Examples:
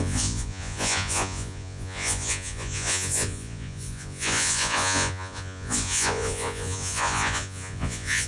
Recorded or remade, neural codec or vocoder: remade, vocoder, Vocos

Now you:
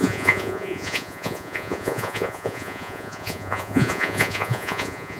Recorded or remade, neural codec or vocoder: remade, vocoder, Vocos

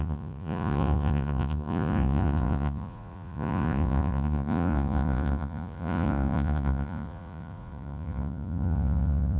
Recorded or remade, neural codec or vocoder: remade, vocoder, Vocos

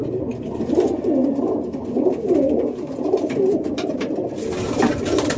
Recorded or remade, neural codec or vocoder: recorded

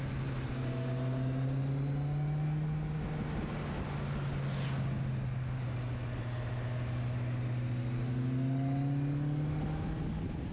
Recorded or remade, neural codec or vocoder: recorded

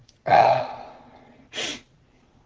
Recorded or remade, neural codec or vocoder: remade, vocoder, Vocos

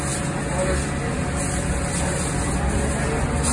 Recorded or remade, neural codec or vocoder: recorded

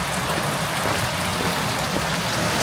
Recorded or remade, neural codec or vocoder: recorded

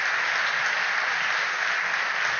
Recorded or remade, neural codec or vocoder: recorded